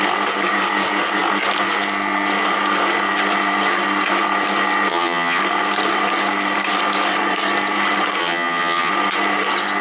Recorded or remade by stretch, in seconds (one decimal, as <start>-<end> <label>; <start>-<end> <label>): 0.0-4.9 recorded; 4.9-5.4 remade; 5.4-8.2 recorded; 8.2-8.9 remade; 8.9-9.8 recorded